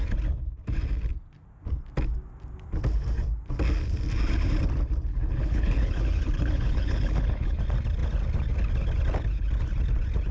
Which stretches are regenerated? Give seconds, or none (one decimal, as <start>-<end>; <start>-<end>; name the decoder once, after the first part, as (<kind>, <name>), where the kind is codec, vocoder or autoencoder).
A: 5.1-7.6 (codec, HILCodec)